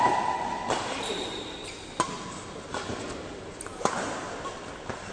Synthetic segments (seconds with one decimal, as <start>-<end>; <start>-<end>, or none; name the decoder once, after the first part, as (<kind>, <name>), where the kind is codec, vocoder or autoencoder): none